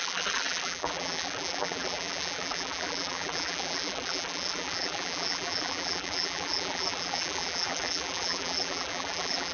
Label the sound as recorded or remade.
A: remade